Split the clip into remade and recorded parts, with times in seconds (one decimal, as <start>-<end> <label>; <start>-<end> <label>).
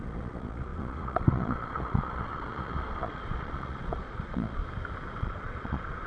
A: 0.0-4.6 remade; 4.6-5.2 recorded; 5.2-6.1 remade